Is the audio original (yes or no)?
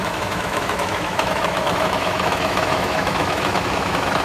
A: no